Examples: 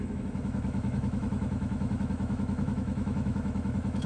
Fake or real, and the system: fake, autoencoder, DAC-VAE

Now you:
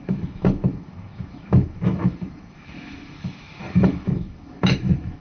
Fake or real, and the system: fake, autoencoder, DAC-VAE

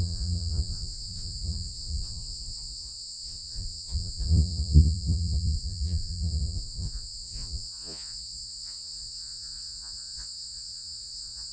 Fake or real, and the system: fake, vocoder, Vocos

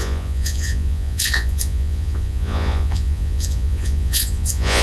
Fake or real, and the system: fake, vocoder, Vocos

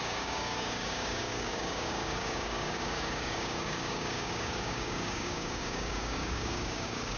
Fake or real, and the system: fake, codec, DAC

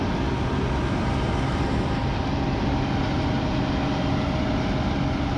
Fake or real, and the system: real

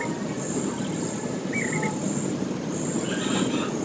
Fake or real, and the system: real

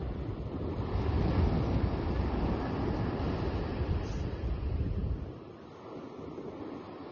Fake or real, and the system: real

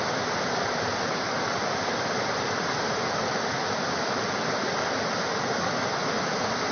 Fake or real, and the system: real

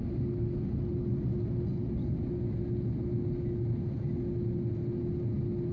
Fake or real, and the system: real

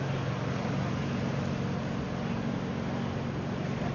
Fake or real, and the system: real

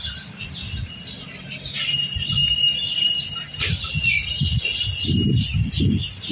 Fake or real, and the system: real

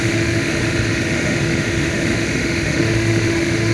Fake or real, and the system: fake, autoencoder, DAC-VAE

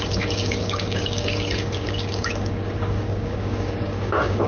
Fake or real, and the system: fake, codec, DAC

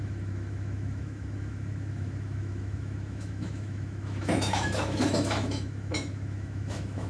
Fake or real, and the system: fake, autoencoder, DAC-VAE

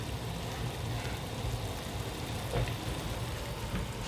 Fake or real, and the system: real